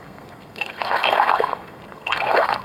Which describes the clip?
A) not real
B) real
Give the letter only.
A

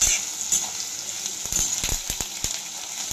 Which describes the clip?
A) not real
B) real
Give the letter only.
B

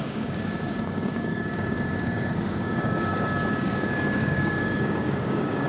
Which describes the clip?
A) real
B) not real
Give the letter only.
B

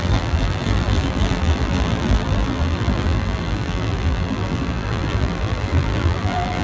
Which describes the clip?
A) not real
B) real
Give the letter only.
A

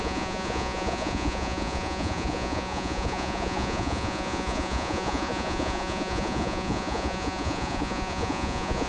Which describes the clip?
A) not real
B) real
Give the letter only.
A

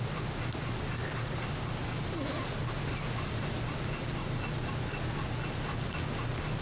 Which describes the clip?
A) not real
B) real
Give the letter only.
B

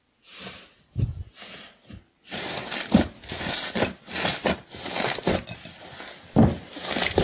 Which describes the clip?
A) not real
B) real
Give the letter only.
B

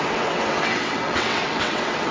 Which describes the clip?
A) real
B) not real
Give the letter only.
B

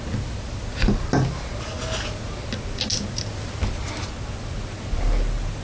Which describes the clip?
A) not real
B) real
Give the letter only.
B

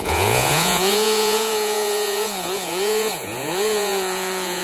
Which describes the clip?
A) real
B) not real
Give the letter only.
B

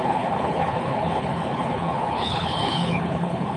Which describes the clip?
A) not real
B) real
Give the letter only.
A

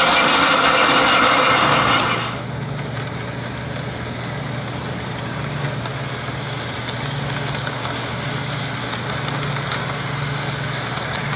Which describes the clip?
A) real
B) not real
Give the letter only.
A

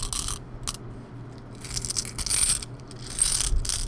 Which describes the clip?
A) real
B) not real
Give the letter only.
A